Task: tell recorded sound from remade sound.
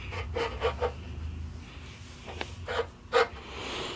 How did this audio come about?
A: recorded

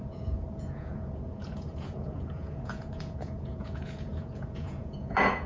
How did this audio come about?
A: remade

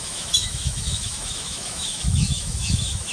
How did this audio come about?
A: remade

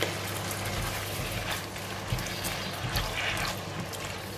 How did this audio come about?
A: recorded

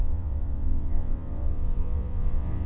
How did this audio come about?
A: remade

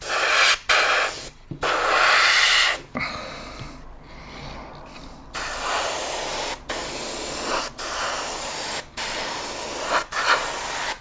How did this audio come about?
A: recorded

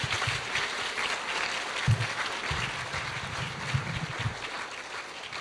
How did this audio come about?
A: recorded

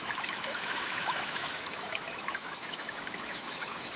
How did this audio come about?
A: remade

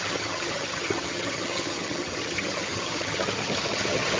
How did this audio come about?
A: remade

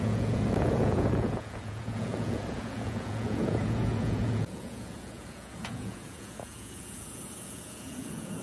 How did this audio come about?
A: remade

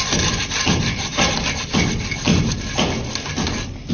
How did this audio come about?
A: recorded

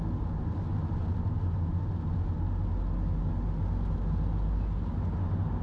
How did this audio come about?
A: recorded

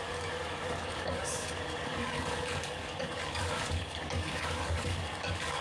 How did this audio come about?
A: remade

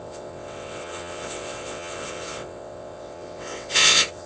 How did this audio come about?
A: remade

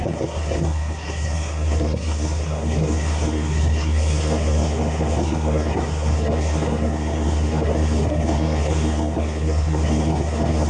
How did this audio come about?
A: remade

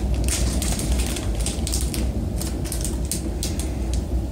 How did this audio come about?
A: recorded